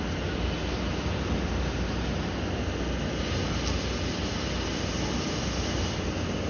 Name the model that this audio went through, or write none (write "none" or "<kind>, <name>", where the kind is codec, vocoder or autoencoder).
none